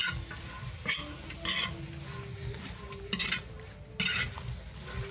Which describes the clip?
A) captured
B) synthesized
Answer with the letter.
A